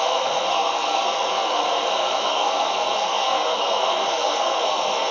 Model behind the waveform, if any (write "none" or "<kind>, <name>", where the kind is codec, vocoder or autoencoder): codec, SNAC